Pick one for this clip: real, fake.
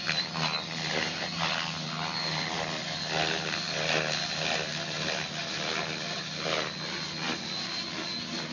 real